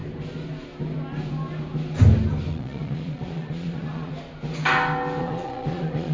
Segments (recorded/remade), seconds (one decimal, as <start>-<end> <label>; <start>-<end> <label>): 0.0-2.5 recorded; 2.5-4.1 remade; 4.1-5.2 recorded; 5.2-6.1 remade